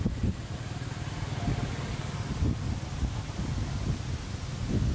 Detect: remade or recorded recorded